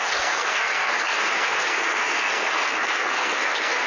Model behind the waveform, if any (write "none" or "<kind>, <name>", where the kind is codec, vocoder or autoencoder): codec, SNAC